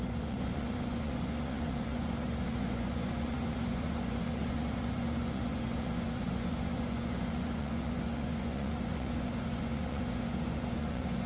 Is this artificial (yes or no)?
yes